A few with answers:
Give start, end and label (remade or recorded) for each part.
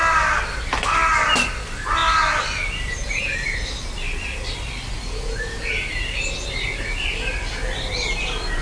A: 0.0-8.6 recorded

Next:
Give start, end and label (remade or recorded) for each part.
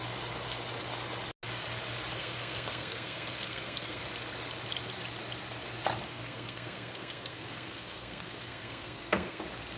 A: 0.0-2.2 recorded; 2.2-4.0 remade; 4.0-6.1 recorded; 6.1-9.4 remade; 9.4-9.8 recorded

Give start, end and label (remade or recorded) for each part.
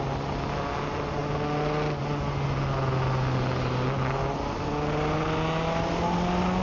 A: 0.0-6.6 recorded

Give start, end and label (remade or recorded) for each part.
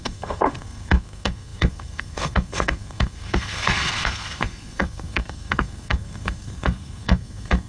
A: 0.0-7.7 remade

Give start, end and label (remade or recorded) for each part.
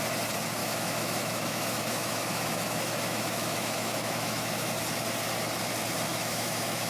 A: 0.0-0.6 recorded; 0.6-4.7 remade; 4.7-6.1 recorded; 6.1-6.9 remade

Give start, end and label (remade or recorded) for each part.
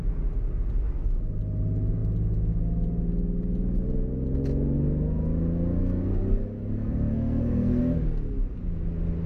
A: 0.0-5.8 recorded; 5.8-7.8 remade; 7.8-9.3 recorded